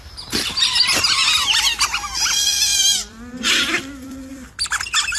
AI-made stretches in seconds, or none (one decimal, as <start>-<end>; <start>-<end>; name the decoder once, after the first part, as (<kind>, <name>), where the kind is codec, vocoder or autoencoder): 0.0-5.2 (vocoder, BigVGAN v2)